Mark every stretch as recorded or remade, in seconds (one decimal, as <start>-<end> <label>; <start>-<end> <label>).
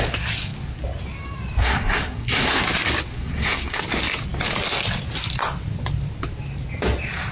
0.0-1.6 recorded; 1.6-2.6 remade; 2.6-3.1 recorded; 3.1-3.8 remade; 3.8-7.3 recorded